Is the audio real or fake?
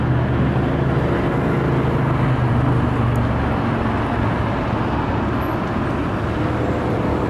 real